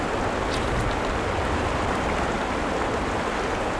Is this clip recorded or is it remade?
recorded